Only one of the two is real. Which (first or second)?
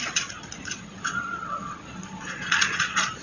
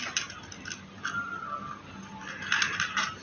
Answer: second